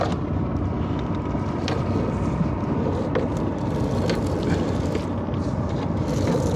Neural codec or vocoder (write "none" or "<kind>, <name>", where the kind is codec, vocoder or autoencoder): none